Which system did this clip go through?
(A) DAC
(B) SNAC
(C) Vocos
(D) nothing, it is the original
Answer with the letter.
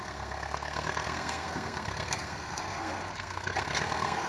B